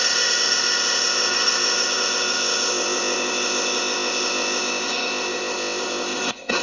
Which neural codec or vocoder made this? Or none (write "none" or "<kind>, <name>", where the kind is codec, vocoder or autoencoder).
codec, ZipCodec